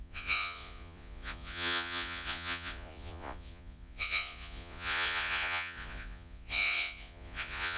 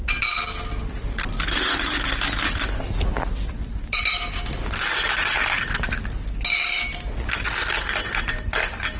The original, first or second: second